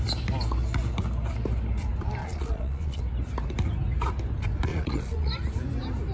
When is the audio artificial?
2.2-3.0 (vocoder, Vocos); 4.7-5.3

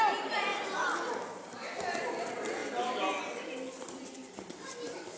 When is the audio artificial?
4.2-5.2 (vocoder, BigVGAN v2)

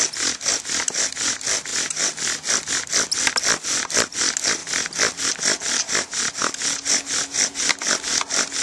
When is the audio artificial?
none

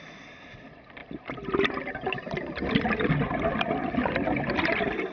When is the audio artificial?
none